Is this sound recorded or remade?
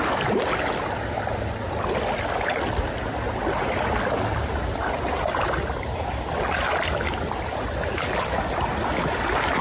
recorded